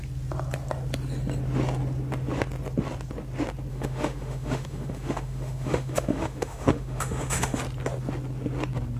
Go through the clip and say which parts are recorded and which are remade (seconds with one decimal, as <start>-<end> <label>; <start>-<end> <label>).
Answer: 0.0-3.7 recorded; 3.7-7.6 remade; 7.6-9.0 recorded